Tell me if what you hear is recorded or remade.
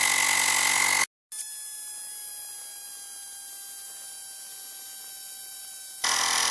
recorded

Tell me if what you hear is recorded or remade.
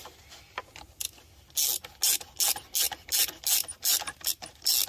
recorded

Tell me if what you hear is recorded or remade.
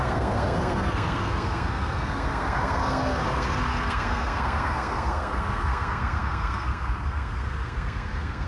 remade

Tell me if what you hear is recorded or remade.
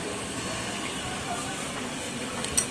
recorded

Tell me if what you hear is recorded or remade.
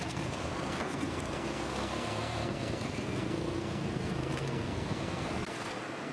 remade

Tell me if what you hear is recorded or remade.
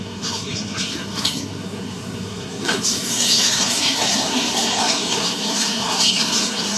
remade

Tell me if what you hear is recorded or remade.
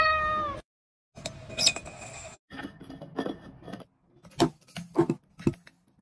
recorded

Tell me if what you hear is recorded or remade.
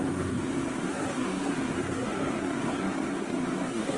remade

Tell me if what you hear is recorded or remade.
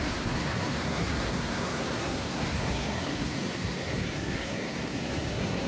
remade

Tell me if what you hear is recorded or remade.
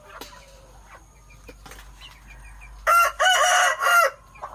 recorded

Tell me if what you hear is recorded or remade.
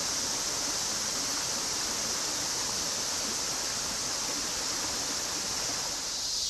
recorded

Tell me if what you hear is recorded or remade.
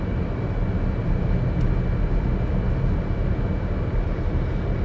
recorded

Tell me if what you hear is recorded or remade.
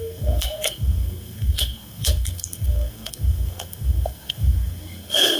remade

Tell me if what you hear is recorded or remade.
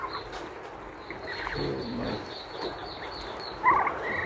recorded